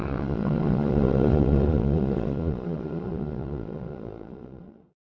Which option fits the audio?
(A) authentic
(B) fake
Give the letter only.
B